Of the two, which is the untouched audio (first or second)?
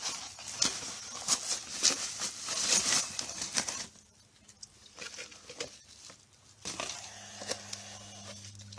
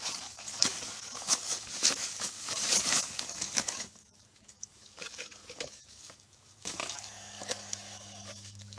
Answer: first